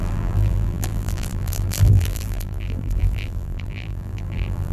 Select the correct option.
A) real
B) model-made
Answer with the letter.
B